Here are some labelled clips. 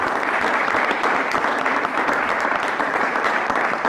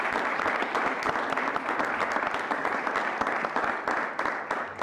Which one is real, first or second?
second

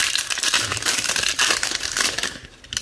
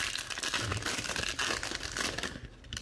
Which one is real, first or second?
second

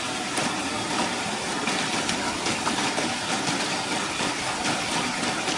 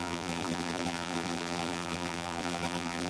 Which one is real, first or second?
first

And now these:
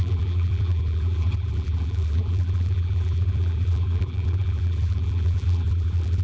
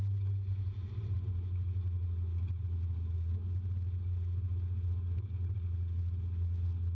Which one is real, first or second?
second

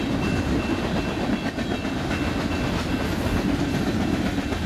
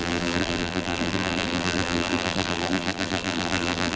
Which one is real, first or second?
first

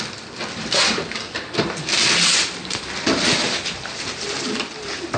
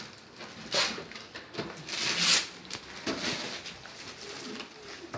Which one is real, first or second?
second